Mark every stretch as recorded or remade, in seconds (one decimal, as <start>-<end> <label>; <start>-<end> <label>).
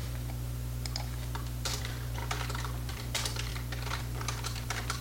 0.0-1.8 recorded; 1.8-2.2 remade; 2.2-2.9 recorded; 2.9-3.5 remade; 3.5-4.0 recorded; 4.0-5.0 remade